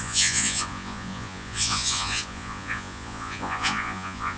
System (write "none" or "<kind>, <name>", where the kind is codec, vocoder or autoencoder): vocoder, Vocos